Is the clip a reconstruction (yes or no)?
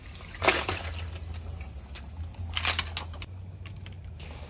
no